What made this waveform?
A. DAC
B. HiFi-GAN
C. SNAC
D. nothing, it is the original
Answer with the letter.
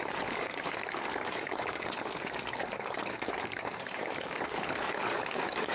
A